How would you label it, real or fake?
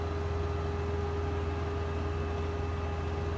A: real